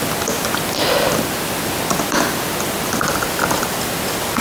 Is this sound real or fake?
real